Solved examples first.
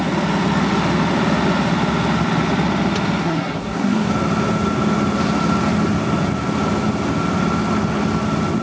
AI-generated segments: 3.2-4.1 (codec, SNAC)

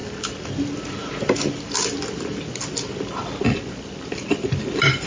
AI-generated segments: none

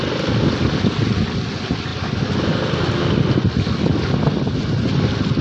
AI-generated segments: none

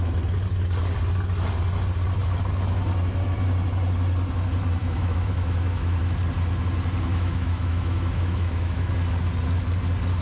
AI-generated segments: 4.8-6.0 (autoencoder, DAC-VAE); 7.1-8.9

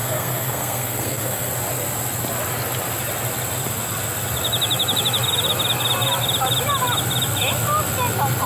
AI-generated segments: 0.0-1.5 (codec, SNAC)

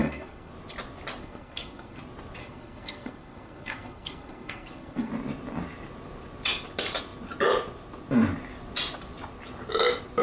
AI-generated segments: 0.0-0.5 (codec, SNAC); 1.2-2.0; 2.4-5.1

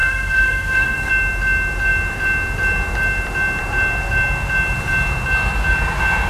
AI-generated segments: 0.0-1.1 (codec, SNAC)